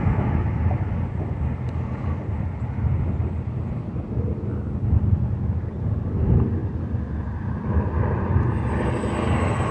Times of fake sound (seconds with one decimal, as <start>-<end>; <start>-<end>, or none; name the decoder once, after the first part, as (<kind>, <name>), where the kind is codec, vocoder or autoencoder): none